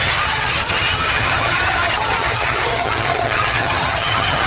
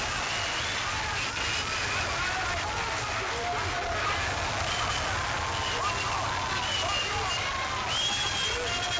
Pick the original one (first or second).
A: second